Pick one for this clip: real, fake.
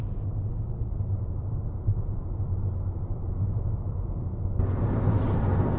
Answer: real